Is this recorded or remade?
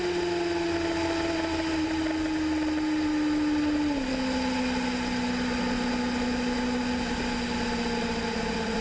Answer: recorded